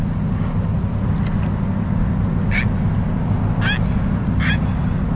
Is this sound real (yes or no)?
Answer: yes